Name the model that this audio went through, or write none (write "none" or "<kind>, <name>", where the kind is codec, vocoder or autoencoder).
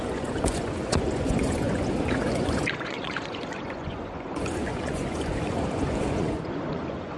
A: vocoder, Vocos